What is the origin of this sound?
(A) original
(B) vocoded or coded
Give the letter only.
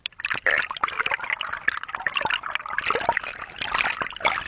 A